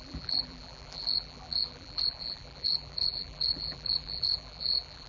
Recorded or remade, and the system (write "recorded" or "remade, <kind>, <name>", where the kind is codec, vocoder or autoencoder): remade, vocoder, BigVGAN v2